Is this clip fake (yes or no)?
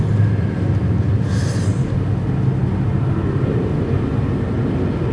no